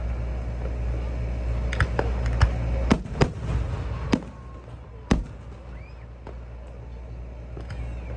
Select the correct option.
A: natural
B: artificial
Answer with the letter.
A